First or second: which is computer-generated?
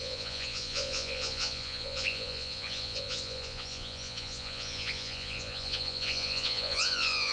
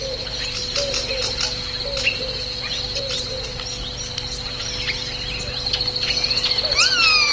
first